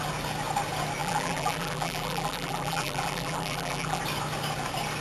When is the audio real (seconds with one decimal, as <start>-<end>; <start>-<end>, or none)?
0.0-1.0; 4.0-5.0